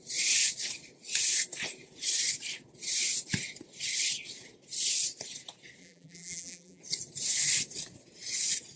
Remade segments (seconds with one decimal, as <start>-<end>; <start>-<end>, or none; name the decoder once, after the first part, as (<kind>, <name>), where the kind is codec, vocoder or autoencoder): 5.8-6.8 (vocoder, BigVGAN v2)